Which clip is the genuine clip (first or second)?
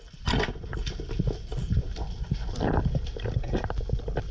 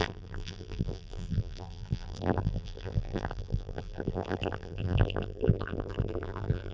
first